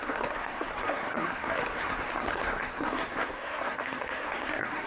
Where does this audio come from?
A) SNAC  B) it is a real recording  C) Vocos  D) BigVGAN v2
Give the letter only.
A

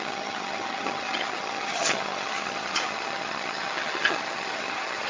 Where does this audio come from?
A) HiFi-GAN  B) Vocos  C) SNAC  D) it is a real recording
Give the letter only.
A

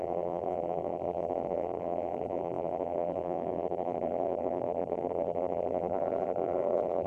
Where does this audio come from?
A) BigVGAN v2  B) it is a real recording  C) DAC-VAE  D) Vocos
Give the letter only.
A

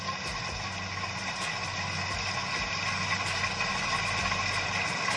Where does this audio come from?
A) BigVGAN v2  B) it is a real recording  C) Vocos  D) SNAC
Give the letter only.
B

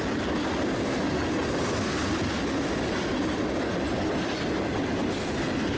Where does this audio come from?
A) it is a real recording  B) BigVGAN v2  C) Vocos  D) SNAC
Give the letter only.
A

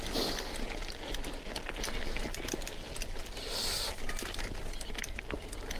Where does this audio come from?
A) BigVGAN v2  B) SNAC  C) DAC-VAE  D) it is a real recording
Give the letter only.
D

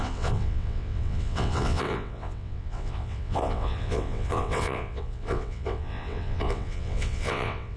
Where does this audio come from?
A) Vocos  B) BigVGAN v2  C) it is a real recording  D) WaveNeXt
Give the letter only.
D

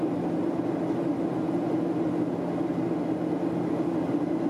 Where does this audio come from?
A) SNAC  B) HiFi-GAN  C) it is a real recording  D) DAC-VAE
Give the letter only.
C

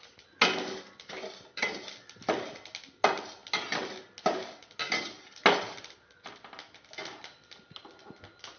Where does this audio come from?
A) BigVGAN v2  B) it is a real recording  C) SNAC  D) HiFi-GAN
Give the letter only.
B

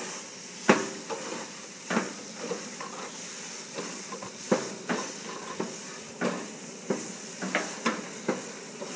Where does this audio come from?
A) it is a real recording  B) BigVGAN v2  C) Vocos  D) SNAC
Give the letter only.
A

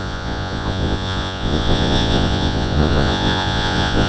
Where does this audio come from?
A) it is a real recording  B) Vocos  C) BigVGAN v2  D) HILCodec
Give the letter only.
B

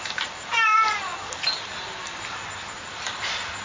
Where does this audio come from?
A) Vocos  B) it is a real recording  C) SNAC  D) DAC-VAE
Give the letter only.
B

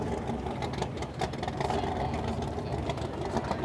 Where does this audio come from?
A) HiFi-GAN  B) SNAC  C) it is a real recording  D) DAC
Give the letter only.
C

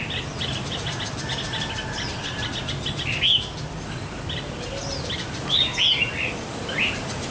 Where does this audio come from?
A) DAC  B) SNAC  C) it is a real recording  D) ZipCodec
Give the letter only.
C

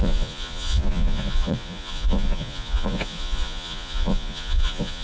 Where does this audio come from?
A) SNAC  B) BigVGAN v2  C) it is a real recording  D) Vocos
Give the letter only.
D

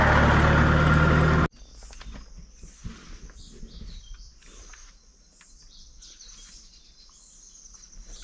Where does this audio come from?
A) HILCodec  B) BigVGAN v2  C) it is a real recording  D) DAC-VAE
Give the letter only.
C